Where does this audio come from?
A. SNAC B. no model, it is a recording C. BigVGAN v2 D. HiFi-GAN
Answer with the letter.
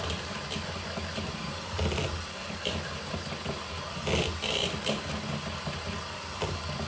B